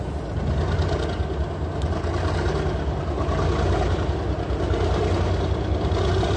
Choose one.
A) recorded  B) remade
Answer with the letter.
A